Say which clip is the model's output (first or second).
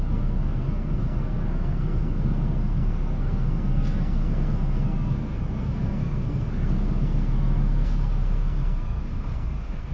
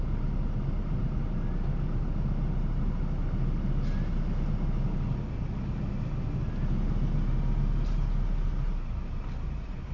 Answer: first